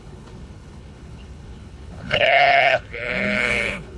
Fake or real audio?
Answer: fake